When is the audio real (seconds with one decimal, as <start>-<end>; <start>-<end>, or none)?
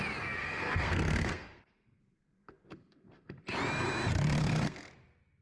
0.0-0.4; 3.4-4.4; 4.9-5.4